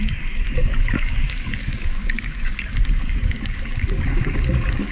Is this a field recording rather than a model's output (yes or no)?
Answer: no